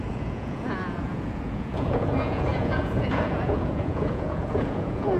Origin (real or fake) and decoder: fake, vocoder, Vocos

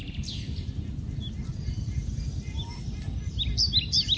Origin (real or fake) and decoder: real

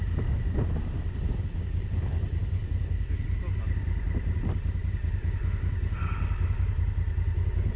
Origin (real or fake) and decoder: real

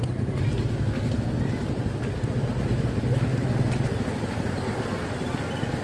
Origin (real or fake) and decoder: real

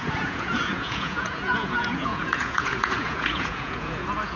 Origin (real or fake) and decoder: fake, vocoder, Vocos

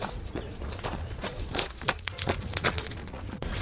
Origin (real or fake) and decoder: fake, vocoder, Vocos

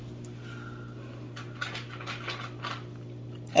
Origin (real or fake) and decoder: real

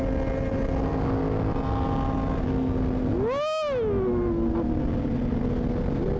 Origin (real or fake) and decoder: real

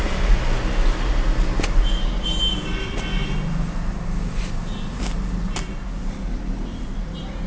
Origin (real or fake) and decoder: real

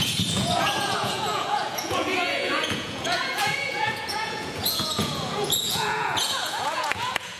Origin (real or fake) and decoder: fake, vocoder, Vocos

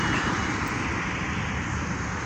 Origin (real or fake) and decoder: real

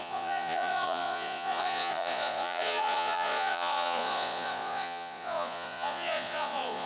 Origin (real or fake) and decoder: fake, vocoder, Vocos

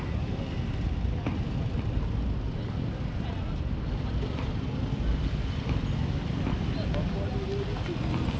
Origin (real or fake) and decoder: real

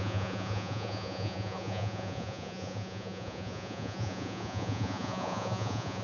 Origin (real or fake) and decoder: fake, vocoder, Vocos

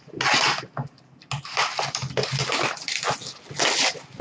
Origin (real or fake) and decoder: real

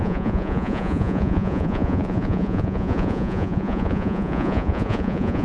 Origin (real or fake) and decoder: fake, vocoder, Vocos